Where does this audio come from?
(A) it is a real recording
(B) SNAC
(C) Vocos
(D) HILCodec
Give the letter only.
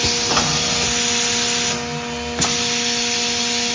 A